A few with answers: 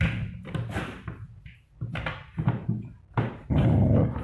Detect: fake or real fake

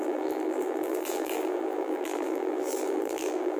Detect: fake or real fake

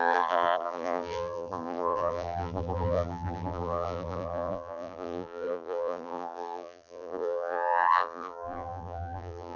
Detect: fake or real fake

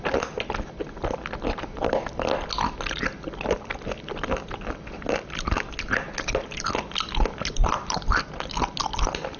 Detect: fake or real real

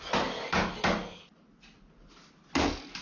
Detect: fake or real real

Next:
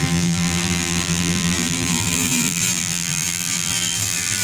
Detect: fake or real fake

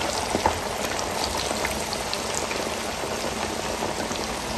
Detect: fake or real real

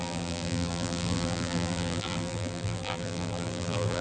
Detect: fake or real fake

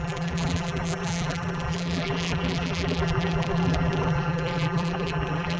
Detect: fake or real fake